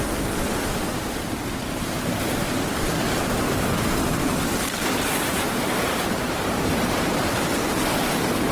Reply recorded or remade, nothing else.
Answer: recorded